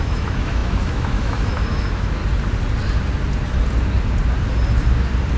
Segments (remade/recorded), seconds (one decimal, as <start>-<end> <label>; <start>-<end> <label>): 0.0-2.2 remade; 2.2-5.4 recorded